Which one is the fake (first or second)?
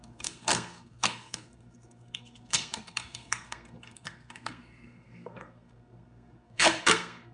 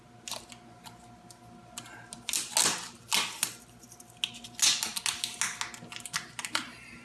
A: first